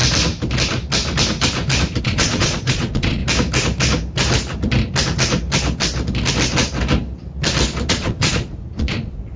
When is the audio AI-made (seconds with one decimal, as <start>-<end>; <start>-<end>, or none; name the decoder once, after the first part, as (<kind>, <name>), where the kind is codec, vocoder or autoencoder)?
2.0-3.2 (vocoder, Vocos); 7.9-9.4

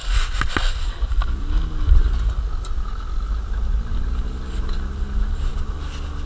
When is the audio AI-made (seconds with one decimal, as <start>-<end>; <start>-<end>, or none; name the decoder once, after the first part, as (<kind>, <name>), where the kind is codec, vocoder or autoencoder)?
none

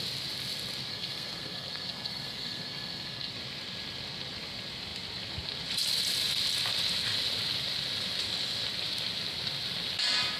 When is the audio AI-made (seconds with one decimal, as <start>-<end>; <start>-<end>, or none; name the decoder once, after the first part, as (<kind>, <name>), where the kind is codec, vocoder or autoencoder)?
0.9-3.3 (codec, SNAC)

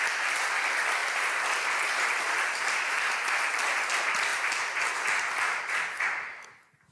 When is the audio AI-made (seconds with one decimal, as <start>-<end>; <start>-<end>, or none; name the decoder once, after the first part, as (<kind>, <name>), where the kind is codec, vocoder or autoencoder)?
1.0-1.7 (vocoder, BigVGAN v2); 4.3-4.9

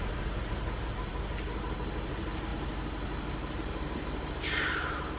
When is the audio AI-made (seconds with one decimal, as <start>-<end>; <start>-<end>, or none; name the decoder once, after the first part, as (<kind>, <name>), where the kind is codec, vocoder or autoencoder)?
0.0-1.1 (vocoder, BigVGAN v2); 2.1-2.5; 4.3-5.2

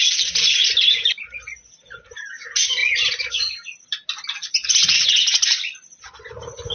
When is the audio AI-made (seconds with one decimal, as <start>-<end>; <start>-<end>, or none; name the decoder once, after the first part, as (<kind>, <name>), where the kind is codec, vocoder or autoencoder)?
none

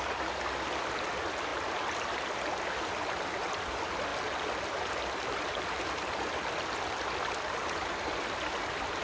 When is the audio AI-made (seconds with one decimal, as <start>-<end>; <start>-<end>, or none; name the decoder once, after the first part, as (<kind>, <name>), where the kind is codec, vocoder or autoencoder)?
none